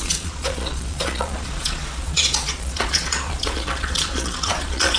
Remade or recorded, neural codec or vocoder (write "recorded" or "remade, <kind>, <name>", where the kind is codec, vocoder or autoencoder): remade, vocoder, Vocos